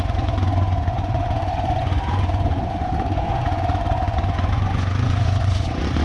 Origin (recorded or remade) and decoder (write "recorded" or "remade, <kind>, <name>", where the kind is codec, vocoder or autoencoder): remade, vocoder, Vocos